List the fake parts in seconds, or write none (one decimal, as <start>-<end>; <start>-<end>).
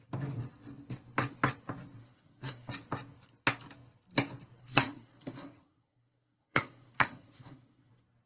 2.0-2.7; 4.6-7.9